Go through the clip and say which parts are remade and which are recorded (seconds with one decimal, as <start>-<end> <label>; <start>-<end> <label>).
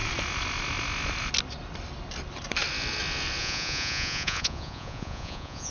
0.0-3.4 recorded; 3.4-5.7 remade